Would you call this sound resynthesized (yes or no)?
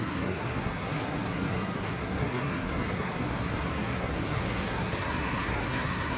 yes